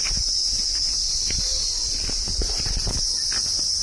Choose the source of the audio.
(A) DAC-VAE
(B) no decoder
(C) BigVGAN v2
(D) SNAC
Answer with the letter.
B